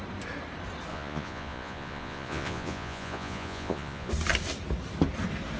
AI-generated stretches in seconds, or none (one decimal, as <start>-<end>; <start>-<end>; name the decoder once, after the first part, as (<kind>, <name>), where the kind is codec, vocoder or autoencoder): 0.9-4.1 (vocoder, Vocos)